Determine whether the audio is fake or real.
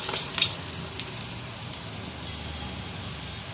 real